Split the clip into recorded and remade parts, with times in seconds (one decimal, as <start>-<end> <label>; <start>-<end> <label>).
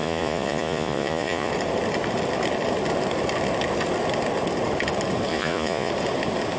0.0-1.5 remade; 1.5-5.3 recorded; 5.3-5.9 remade; 5.9-6.6 recorded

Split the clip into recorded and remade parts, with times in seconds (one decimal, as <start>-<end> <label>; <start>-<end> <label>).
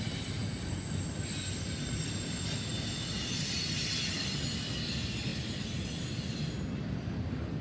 0.0-7.6 recorded